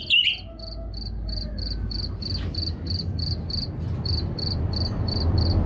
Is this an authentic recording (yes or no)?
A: yes